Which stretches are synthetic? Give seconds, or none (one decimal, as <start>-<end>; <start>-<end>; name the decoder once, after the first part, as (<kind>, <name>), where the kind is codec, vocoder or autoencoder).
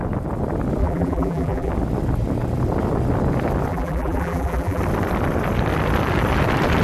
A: 0.8-1.7 (vocoder, BigVGAN v2); 3.7-4.8